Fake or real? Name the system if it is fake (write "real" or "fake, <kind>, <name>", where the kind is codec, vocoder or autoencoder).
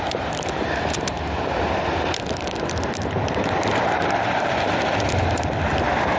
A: fake, vocoder, BigVGAN v2